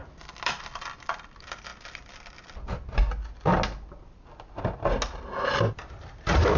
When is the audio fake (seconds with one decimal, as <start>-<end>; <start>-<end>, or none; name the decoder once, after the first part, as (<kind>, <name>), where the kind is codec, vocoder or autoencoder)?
0.0-1.7 (vocoder, BigVGAN v2); 5.7-6.6